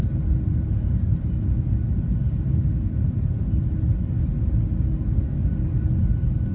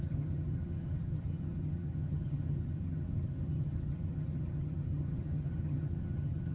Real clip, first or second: first